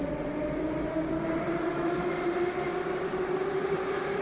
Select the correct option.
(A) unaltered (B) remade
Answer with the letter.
A